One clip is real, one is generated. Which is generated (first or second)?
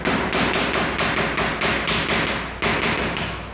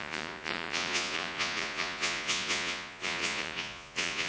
second